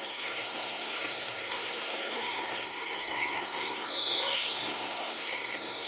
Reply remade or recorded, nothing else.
remade